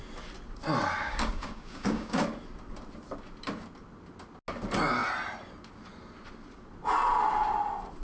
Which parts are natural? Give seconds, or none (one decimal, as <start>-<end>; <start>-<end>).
0.0-1.0; 2.2-8.0